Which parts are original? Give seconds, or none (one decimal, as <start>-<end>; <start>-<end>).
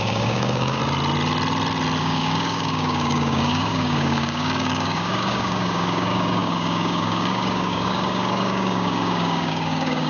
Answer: 0.8-2.0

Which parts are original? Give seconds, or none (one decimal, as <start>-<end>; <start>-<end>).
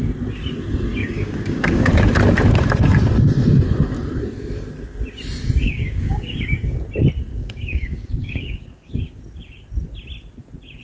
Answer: 0.0-1.0; 1.9-5.6; 6.8-7.3; 8.9-10.8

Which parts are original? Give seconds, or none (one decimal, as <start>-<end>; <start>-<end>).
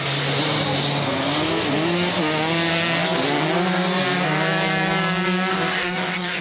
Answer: 0.0-5.5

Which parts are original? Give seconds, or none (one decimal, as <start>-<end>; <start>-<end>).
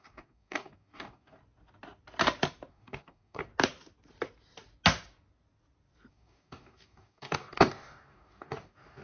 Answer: 1.4-2.7; 3.5-6.1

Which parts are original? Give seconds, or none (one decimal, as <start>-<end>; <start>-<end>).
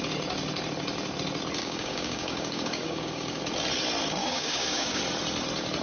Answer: 0.0-1.6; 3.4-4.2; 5.0-5.8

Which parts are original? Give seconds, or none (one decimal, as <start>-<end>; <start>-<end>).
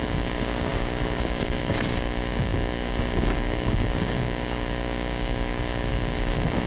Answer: none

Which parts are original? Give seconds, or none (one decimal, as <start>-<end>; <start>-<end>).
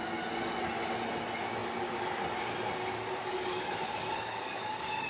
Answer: 0.0-3.2